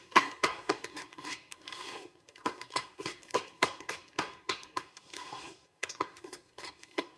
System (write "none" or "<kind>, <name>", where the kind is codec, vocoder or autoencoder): codec, SNAC